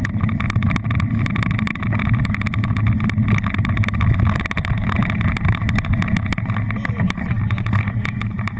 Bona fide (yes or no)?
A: yes